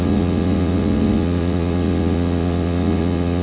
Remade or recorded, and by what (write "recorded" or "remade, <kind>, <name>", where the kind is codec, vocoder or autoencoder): remade, vocoder, Vocos